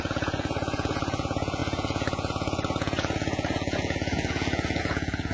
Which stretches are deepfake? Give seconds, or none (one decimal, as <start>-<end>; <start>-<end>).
0.0-5.3